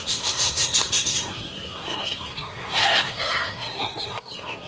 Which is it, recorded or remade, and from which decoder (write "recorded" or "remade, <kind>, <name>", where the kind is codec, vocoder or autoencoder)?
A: remade, codec, SNAC